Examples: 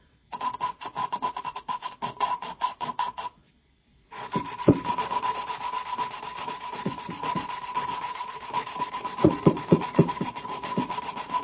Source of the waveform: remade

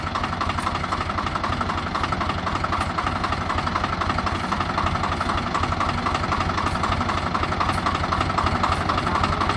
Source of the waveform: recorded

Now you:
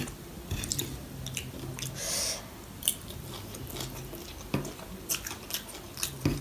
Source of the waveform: recorded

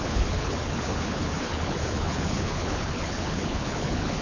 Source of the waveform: remade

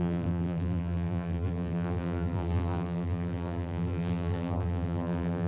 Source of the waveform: remade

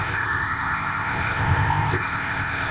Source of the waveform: remade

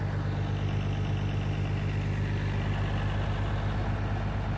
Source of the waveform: recorded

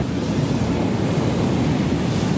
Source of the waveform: recorded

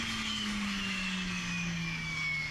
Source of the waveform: remade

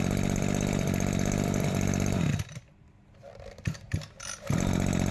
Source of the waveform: recorded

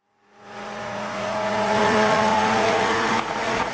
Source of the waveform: remade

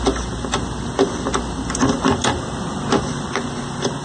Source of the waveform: recorded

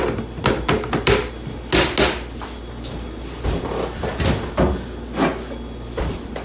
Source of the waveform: recorded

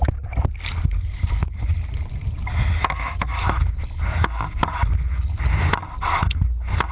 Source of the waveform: recorded